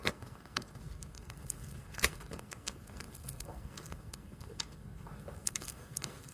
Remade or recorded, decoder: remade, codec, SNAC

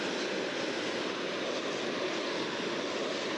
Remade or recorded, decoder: recorded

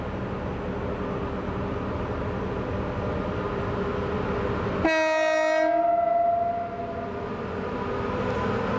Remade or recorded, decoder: recorded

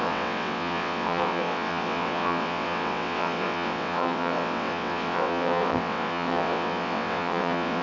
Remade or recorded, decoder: remade, vocoder, WaveNeXt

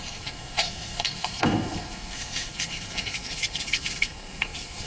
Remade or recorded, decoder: remade, codec, SNAC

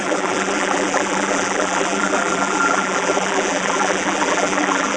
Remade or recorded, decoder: remade, vocoder, BigVGAN v2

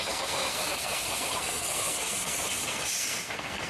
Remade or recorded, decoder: remade, codec, SNAC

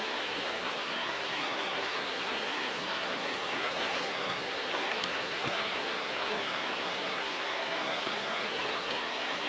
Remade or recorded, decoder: remade, codec, SNAC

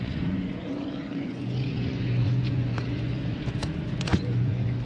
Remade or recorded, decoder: remade, vocoder, Vocos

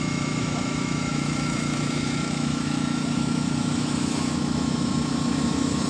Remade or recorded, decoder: remade, autoencoder, DAC-VAE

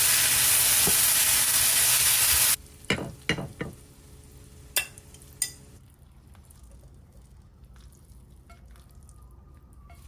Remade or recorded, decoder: recorded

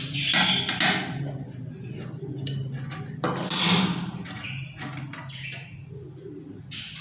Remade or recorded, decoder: recorded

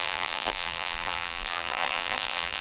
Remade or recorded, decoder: remade, vocoder, BigVGAN v2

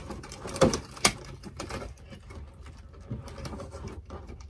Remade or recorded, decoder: recorded